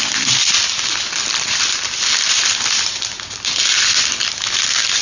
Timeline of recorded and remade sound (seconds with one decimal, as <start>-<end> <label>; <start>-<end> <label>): 0.0-0.6 recorded; 0.6-3.6 remade; 3.6-5.0 recorded